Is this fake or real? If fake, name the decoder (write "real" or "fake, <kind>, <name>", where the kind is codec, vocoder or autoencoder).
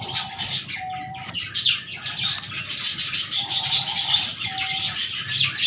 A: real